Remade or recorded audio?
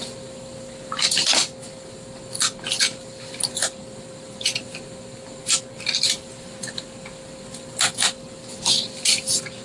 recorded